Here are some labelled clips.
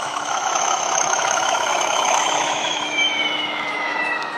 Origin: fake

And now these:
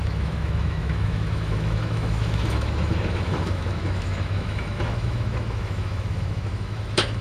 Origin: fake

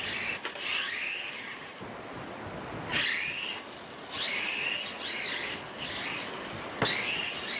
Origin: real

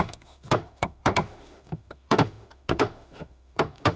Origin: fake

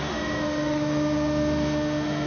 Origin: fake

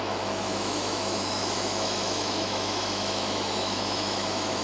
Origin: fake